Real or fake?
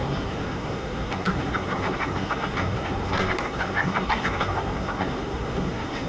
fake